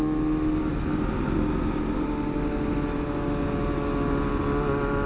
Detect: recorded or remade recorded